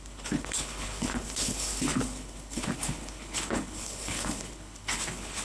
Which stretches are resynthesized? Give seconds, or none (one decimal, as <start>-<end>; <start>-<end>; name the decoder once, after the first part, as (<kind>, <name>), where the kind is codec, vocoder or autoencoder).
0.0-5.4 (codec, HILCodec)